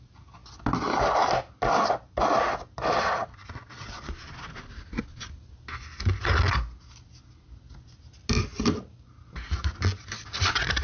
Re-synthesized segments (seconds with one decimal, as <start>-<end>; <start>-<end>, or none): none